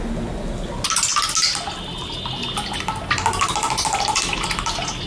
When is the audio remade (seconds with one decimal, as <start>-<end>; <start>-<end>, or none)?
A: none